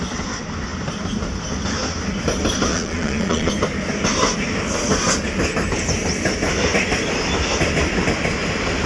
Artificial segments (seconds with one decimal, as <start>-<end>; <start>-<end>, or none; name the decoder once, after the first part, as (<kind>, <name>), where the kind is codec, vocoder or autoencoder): 2.7-3.5 (vocoder, Vocos)